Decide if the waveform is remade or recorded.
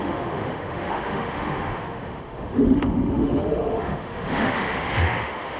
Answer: remade